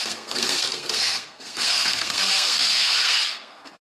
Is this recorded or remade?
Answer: remade